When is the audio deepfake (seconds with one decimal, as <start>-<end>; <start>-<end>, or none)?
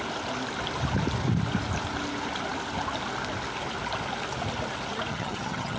5.1-5.8